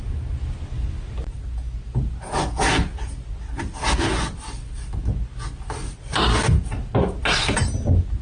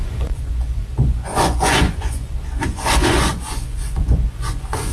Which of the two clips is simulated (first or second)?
second